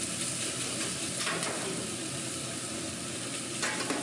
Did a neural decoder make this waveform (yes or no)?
no